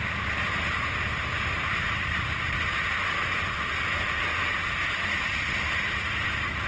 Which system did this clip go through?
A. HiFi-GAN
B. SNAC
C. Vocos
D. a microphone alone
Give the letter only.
D